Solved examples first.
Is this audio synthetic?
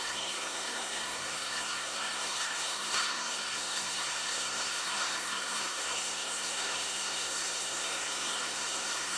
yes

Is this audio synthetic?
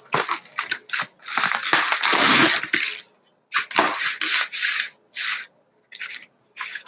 no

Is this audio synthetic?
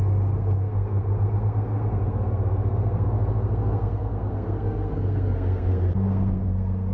yes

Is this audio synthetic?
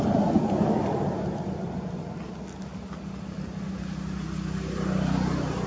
no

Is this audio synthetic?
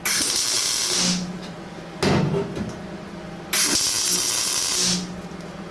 no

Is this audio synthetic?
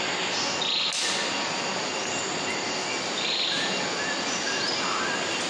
no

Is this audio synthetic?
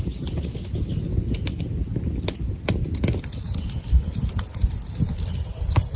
no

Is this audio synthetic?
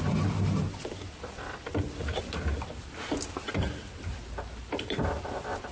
no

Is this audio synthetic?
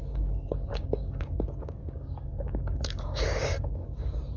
yes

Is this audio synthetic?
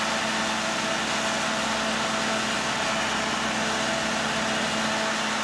no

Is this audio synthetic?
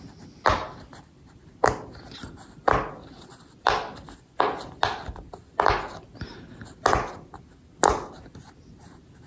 no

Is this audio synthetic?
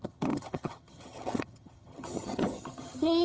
yes